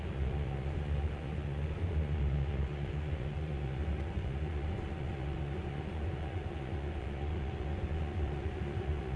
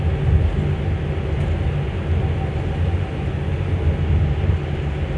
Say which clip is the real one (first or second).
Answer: second